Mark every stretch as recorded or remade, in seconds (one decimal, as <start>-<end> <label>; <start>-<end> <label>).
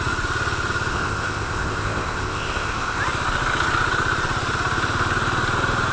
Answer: 0.0-0.9 recorded; 0.9-3.0 remade; 3.0-5.9 recorded